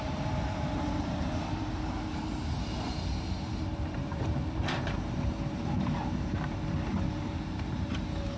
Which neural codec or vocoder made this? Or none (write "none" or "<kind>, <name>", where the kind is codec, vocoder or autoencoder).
vocoder, BigVGAN v2